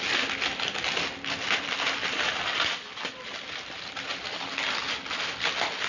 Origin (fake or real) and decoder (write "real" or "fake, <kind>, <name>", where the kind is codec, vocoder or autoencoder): real